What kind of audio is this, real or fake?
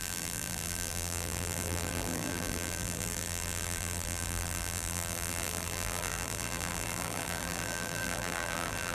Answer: fake